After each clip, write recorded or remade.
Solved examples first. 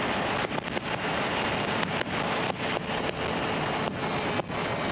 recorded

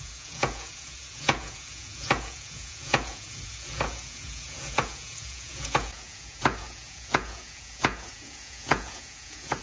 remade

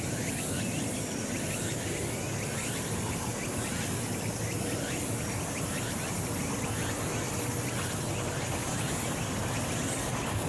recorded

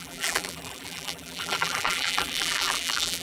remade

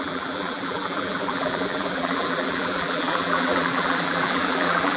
remade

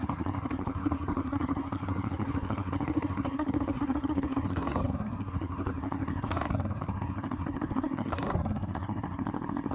remade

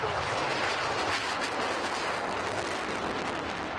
recorded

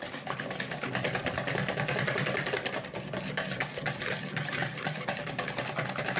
recorded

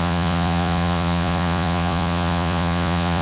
remade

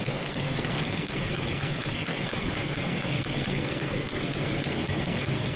remade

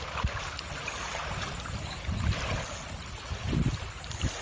recorded